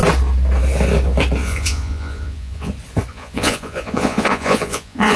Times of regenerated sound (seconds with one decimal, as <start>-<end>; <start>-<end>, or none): 1.4-2.7; 3.1-5.2